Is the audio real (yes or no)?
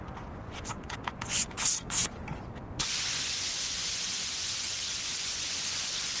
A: no